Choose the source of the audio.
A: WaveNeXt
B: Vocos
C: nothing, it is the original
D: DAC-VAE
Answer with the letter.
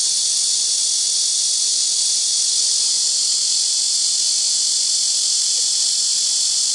B